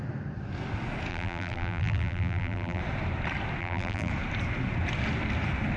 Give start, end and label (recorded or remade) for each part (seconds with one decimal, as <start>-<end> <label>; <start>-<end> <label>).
0.0-1.1 recorded; 1.1-2.8 remade; 2.8-3.6 recorded; 3.6-4.1 remade; 4.1-5.8 recorded